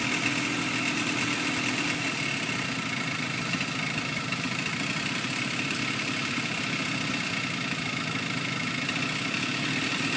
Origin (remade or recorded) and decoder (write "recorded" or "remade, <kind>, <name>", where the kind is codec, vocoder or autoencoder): recorded